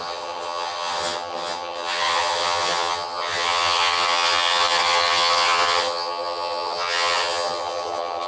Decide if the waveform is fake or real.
fake